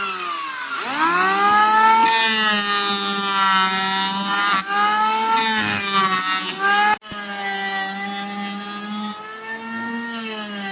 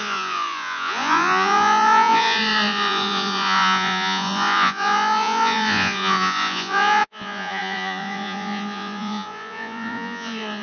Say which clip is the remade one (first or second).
second